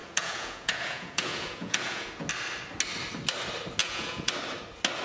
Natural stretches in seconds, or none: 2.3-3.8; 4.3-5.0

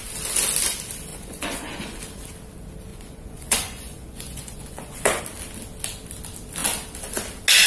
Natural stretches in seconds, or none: 0.0-1.1; 2.0-2.9; 5.2-7.7

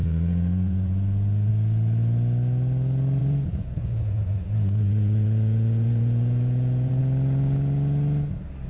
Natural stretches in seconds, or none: 1.5-3.2; 7.0-8.7

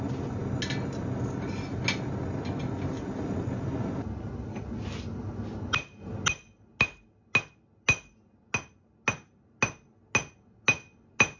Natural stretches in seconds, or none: 0.0-11.4